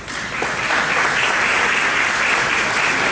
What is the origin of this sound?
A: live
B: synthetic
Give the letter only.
A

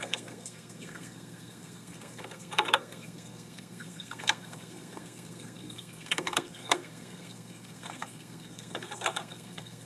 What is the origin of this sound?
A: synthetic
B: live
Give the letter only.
A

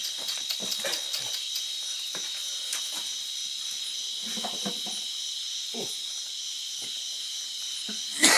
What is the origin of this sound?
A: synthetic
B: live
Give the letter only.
B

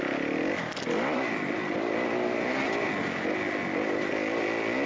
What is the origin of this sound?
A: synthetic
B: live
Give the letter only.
B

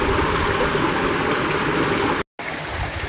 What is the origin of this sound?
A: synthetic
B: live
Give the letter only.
B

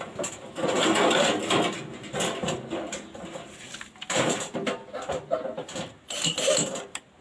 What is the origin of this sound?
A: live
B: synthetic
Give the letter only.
A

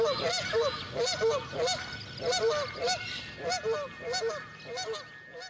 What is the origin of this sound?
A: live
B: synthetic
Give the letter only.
A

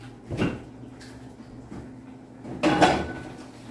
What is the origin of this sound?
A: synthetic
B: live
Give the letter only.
B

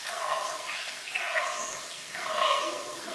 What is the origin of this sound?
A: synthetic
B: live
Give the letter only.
A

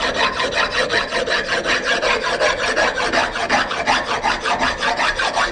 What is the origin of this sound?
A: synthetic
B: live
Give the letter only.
B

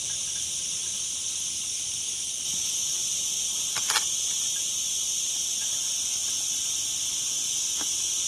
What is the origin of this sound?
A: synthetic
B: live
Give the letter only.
B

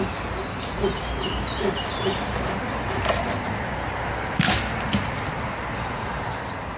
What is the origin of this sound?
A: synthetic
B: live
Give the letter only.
B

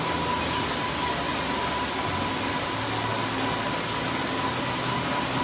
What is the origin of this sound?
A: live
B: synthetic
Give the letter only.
A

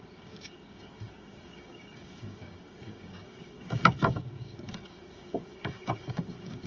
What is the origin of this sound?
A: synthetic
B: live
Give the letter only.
A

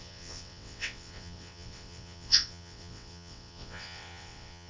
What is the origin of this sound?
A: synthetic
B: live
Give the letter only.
A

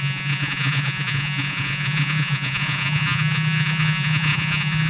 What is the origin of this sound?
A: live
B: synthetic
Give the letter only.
B